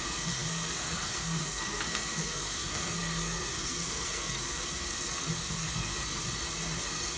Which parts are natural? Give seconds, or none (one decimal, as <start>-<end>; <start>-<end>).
6.2-6.8